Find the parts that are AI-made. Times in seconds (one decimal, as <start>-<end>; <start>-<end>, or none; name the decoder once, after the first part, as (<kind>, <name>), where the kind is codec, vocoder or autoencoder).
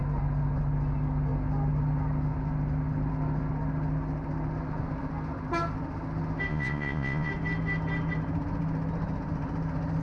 6.5-7.3 (vocoder, Vocos)